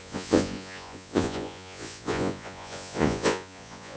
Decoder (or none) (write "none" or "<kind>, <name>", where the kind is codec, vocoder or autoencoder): vocoder, Vocos